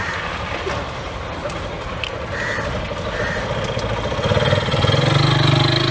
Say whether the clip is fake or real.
real